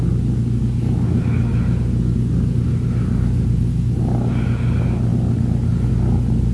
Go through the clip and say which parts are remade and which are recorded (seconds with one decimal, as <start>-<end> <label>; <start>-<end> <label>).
0.0-6.5 recorded